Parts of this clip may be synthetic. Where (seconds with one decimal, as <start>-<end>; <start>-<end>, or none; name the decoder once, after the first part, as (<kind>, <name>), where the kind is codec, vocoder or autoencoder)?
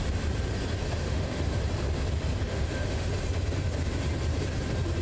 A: 1.0-1.6 (autoencoder, DAC-VAE); 2.5-3.1